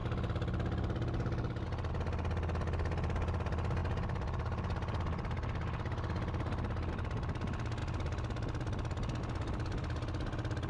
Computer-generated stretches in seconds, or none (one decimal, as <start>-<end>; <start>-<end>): none